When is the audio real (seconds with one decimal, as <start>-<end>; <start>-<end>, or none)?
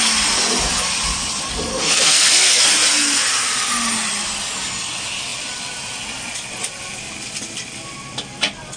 0.0-1.7; 2.6-8.8